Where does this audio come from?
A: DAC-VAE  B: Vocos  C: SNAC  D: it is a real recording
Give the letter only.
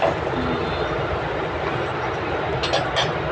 D